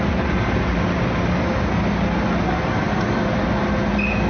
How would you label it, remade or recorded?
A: recorded